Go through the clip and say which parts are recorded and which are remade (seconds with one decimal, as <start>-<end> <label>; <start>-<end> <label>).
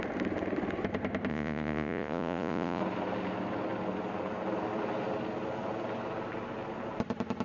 0.0-1.3 recorded; 1.3-2.8 remade; 2.8-7.4 recorded